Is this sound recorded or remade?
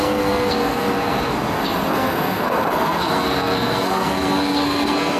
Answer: remade